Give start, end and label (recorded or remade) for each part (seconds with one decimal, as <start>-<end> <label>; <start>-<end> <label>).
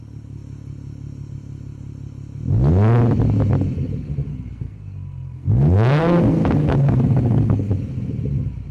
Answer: 0.0-4.3 recorded; 4.3-7.7 remade; 7.7-8.7 recorded